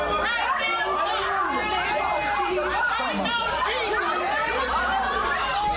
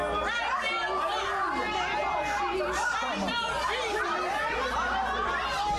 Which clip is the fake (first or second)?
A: first